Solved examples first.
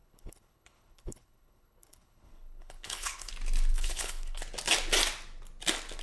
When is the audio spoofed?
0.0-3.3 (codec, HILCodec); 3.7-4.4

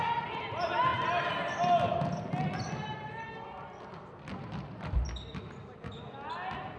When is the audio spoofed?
none

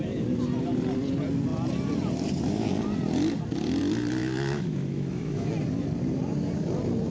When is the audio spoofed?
4.2-5.5 (autoencoder, DAC-VAE)